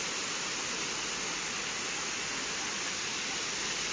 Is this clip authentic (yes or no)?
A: yes